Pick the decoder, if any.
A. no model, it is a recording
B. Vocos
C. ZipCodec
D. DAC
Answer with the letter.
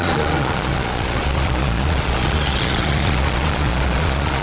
B